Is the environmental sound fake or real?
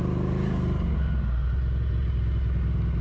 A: real